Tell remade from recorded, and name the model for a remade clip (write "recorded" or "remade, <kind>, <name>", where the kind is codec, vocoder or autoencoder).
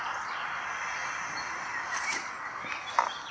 recorded